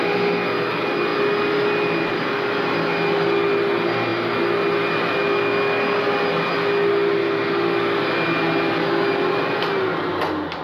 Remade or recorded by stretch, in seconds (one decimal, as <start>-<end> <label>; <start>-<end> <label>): 0.0-10.6 recorded